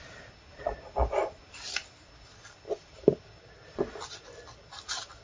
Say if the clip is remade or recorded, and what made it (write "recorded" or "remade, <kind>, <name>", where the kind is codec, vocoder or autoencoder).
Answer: recorded